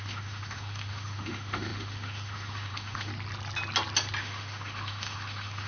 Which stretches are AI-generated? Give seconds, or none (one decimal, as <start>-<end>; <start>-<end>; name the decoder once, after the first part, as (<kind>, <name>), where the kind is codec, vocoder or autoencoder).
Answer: 0.0-3.1 (autoencoder, DAC-VAE); 4.2-5.7